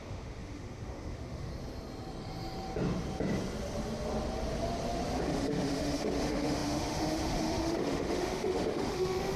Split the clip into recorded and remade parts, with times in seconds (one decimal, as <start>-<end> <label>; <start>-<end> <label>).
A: 0.0-1.5 remade; 1.5-5.2 recorded; 5.2-9.4 remade

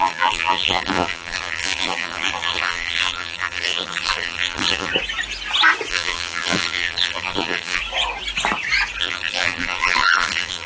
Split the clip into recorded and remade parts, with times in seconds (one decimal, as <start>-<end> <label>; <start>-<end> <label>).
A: 0.0-4.9 remade; 4.9-5.9 recorded; 5.9-7.8 remade; 7.8-9.0 recorded; 9.0-10.7 remade